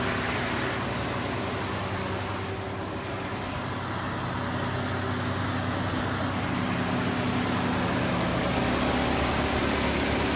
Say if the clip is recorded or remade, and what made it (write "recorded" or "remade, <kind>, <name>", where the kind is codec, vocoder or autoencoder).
recorded